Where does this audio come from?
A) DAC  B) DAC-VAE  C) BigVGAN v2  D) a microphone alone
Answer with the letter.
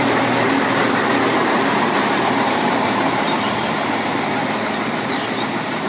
C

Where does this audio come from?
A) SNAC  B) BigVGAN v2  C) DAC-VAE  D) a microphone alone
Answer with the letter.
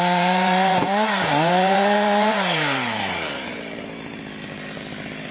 B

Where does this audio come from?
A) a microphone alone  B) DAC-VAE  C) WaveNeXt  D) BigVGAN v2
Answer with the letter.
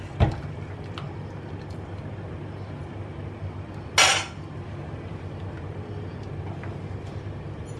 A